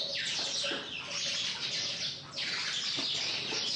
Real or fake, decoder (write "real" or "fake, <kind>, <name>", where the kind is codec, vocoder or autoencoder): real